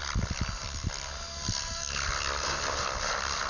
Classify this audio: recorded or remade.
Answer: recorded